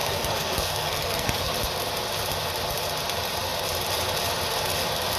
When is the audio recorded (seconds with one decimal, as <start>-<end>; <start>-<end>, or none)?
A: 1.5-5.2